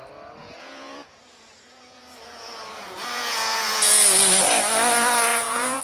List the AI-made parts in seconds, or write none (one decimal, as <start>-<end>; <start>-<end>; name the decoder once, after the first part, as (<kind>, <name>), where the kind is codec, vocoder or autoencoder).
0.4-3.9 (vocoder, Vocos); 5.3-5.8